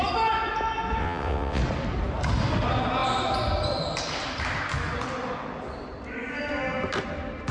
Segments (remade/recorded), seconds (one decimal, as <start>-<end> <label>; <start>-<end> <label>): 0.0-1.0 recorded; 1.0-1.6 remade; 1.6-7.5 recorded